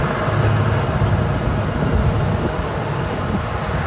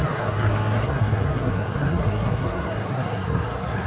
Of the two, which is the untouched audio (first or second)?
first